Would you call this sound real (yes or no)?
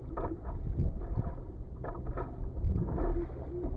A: yes